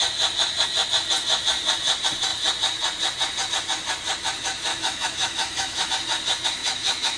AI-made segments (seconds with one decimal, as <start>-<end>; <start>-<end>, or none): 4.7-5.9; 6.6-7.2